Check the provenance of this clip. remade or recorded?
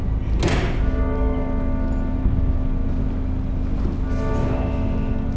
recorded